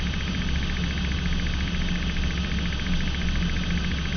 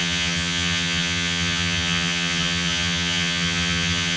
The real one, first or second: first